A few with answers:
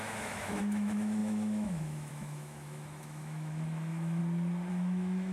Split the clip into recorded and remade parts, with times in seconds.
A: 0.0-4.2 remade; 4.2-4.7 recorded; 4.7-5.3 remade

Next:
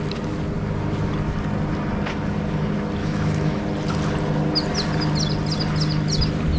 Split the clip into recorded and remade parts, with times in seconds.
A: 0.0-3.0 recorded; 3.0-3.6 remade; 3.6-6.6 recorded

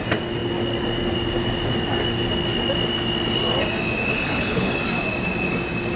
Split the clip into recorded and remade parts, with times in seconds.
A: 0.0-4.1 recorded; 4.1-4.7 remade; 4.7-6.0 recorded

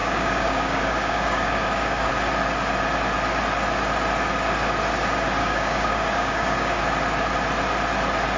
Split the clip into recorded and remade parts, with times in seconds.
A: 0.0-2.1 remade; 2.1-5.4 recorded; 5.4-6.8 remade; 6.8-8.4 recorded

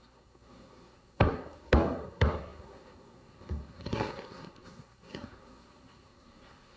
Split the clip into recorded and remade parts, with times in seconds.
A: 0.0-6.8 remade

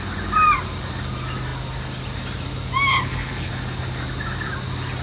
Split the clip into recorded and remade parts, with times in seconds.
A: 0.0-2.9 recorded; 2.9-3.5 remade; 3.5-5.0 recorded

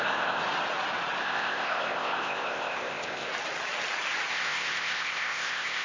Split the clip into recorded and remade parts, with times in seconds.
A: 0.0-0.4 remade; 0.4-1.2 recorded; 1.2-3.3 remade; 3.3-4.3 recorded; 4.3-5.8 remade

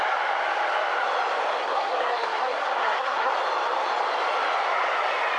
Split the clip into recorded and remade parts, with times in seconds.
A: 0.0-1.6 recorded; 1.6-3.3 remade; 3.3-5.4 recorded